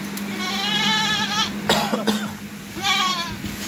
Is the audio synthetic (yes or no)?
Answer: no